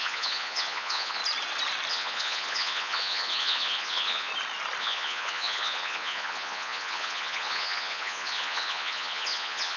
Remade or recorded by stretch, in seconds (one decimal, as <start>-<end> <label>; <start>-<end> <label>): 0.0-1.2 remade; 1.2-1.9 recorded; 1.9-4.3 remade; 4.3-4.8 recorded; 4.8-9.8 remade